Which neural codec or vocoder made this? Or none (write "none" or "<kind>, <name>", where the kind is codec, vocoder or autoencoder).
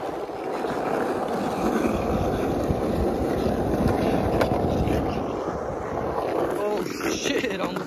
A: none